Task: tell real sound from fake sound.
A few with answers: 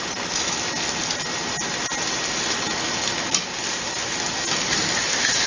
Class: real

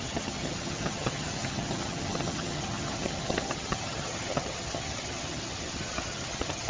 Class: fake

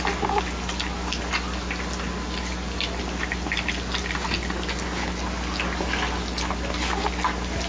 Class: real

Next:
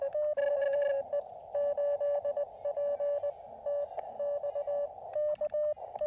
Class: real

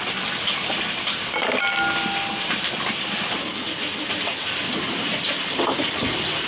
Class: real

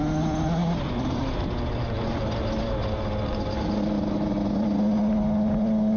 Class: real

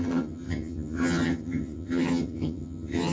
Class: fake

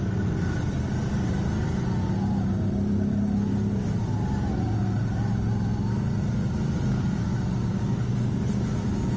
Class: real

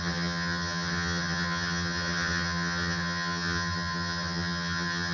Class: fake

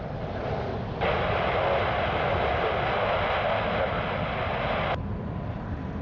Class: real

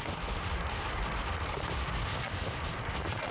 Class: real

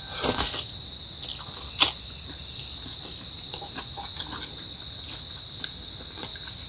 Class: real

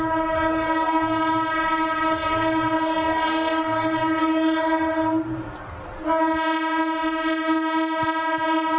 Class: real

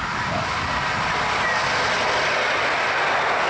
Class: real